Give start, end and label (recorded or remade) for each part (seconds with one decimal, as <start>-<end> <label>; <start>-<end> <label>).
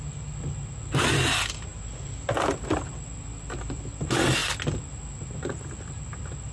0.0-6.5 recorded